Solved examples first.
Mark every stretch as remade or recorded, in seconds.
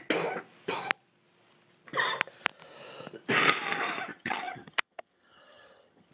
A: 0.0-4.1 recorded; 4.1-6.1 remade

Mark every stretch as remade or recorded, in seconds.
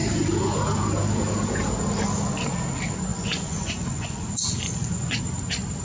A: 0.0-3.1 recorded; 3.1-5.2 remade; 5.2-5.8 recorded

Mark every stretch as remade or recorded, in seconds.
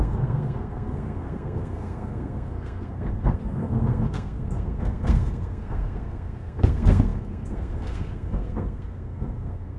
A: 0.0-9.8 remade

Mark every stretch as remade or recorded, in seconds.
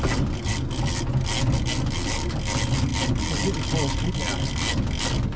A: 0.0-5.4 recorded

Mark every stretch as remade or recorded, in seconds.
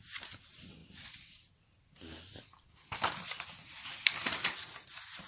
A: 0.0-5.3 recorded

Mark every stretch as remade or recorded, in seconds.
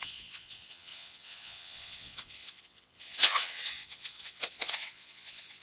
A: 0.0-5.6 remade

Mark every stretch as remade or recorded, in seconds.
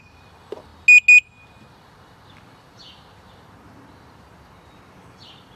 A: 0.0-0.7 remade; 0.7-1.7 recorded; 1.7-5.6 remade